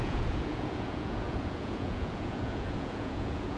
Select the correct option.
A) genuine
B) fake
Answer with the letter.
B